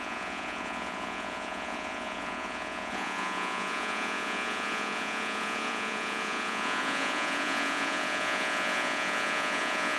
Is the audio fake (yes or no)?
yes